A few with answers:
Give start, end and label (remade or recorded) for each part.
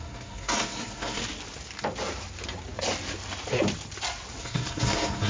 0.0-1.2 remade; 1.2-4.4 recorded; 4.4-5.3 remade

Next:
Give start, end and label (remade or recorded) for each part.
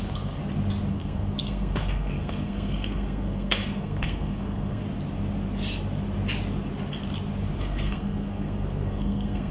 0.0-0.4 remade; 0.4-0.9 recorded; 0.9-4.8 remade; 4.8-7.6 recorded; 7.6-9.5 remade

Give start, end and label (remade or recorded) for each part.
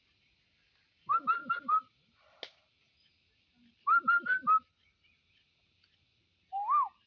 0.0-7.1 recorded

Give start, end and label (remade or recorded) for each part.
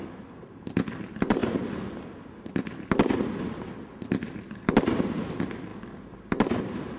0.0-7.0 recorded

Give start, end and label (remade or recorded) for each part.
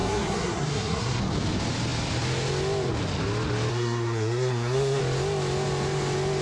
0.0-1.2 remade; 1.2-3.7 recorded; 3.7-5.0 remade; 5.0-6.4 recorded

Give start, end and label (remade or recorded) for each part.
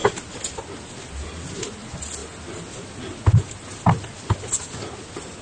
0.0-5.4 recorded